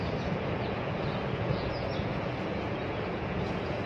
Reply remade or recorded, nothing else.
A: remade